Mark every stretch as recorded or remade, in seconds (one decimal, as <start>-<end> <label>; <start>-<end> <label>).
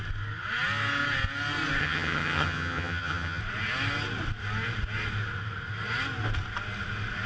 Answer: 0.0-1.8 recorded; 1.8-3.4 remade; 3.4-7.3 recorded